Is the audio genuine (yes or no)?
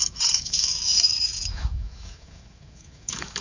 no